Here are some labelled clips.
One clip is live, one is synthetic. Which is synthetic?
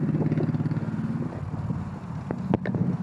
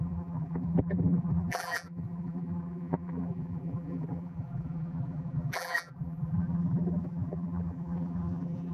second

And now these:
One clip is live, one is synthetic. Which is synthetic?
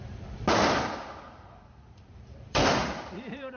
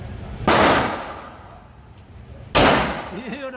first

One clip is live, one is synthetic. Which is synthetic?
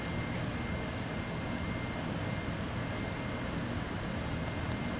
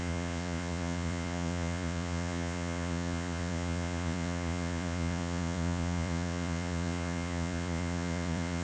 second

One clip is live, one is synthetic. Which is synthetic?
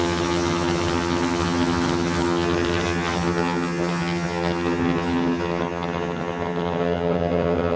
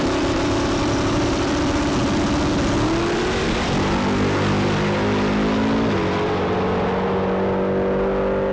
first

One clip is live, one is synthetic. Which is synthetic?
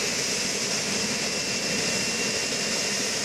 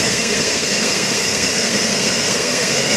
second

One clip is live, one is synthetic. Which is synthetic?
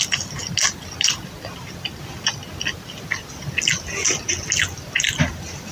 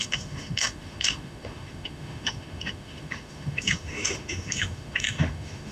second